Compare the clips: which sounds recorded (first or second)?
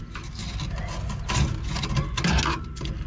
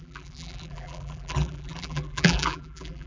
first